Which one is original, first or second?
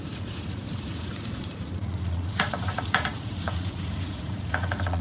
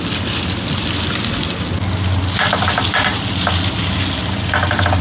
second